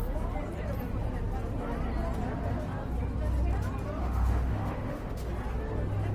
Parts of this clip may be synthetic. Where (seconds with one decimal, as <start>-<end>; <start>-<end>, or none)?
4.0-5.3